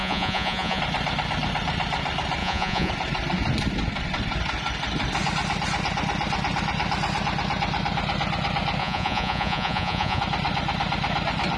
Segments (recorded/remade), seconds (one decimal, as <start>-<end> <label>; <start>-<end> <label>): 0.0-0.8 remade; 0.8-2.4 recorded; 2.4-2.9 remade; 2.9-8.8 recorded; 8.8-10.2 remade; 10.2-11.6 recorded